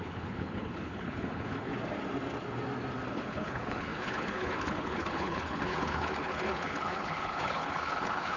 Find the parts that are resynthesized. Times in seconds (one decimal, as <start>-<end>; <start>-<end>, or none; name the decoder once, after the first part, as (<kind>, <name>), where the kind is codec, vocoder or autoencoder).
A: 0.0-1.7 (codec, HILCodec); 3.1-8.4